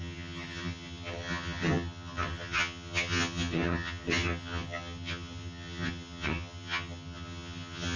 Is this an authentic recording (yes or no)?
no